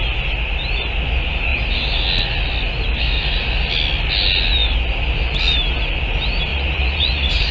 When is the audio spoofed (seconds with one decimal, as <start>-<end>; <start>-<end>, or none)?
6.5-7.5